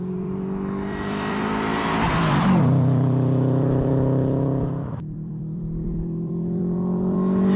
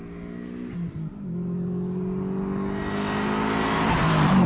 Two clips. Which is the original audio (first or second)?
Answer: second